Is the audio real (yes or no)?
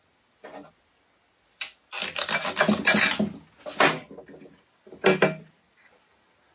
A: yes